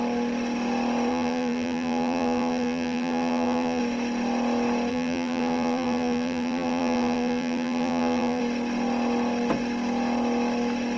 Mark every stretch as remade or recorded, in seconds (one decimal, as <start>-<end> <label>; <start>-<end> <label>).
0.0-1.1 recorded; 1.1-3.8 remade; 3.8-4.9 recorded; 4.9-8.4 remade; 8.4-11.0 recorded